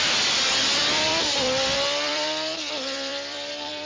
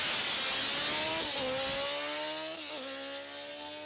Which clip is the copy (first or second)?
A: first